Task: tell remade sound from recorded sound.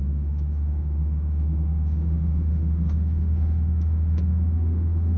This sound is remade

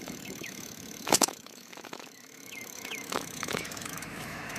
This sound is remade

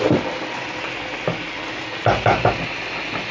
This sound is recorded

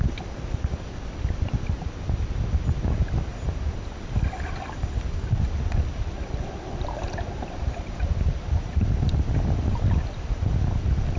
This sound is recorded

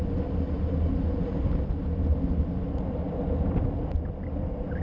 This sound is recorded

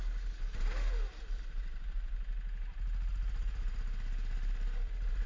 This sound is recorded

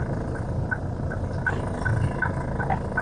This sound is recorded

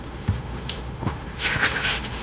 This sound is remade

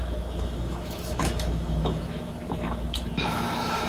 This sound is remade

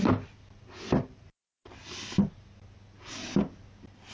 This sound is recorded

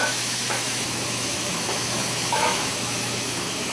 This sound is remade